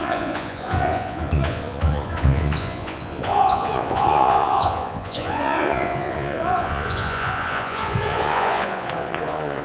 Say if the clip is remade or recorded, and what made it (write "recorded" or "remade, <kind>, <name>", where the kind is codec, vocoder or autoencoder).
remade, vocoder, Vocos